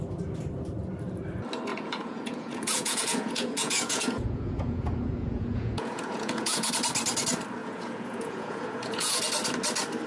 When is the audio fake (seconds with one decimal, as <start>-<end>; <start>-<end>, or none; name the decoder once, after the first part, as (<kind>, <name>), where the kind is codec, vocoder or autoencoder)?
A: 1.7-6.7 (vocoder, Vocos); 7.6-9.2